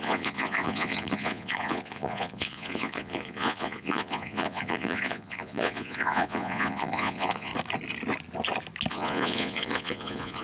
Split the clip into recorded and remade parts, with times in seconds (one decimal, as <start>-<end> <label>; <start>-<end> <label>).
0.0-7.5 remade; 7.5-8.9 recorded; 8.9-10.4 remade